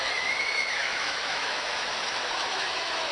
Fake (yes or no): yes